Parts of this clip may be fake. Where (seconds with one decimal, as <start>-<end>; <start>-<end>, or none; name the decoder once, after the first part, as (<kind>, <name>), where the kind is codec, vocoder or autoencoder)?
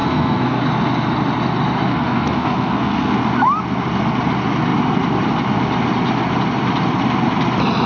0.0-0.6 (codec, SNAC); 1.9-3.2